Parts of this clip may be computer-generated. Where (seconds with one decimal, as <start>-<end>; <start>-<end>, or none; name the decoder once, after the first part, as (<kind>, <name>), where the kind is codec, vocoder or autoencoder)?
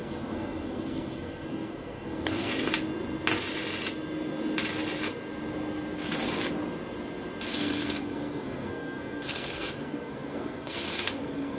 0.0-2.5 (codec, SNAC); 7.5-11.6